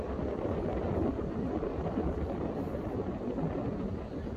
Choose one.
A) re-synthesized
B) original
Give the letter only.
B